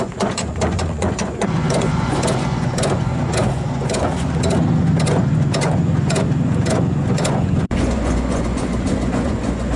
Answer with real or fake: fake